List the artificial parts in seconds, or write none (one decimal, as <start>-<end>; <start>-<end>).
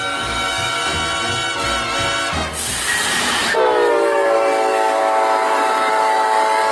0.0-0.8; 3.9-5.0; 5.9-6.7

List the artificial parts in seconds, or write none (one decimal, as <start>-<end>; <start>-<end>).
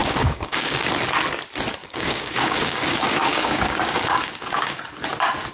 0.0-0.9; 1.8-4.8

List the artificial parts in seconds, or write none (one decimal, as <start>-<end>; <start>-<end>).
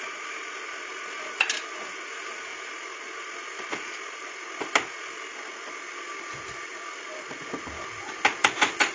none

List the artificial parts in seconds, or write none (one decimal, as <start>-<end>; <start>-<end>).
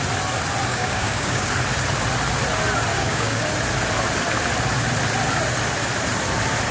0.7-1.5; 2.9-3.4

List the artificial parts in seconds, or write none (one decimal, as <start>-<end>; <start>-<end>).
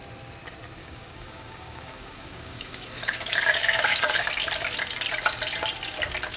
0.8-4.3